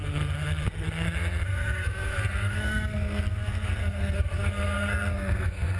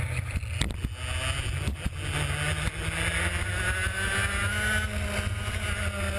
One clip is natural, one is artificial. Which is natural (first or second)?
second